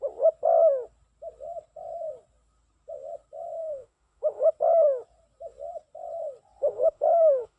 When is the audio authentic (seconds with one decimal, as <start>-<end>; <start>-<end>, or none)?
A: 0.0-3.6; 4.5-6.6